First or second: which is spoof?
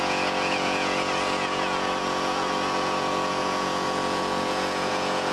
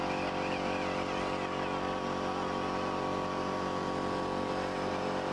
first